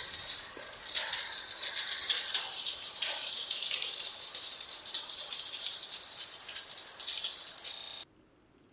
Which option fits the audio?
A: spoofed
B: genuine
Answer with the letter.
A